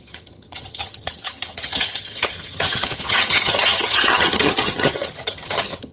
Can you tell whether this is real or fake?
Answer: fake